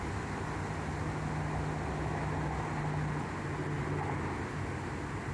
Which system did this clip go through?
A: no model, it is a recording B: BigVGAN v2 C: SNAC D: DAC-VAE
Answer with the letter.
A